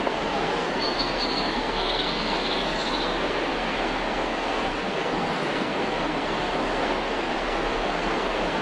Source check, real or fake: fake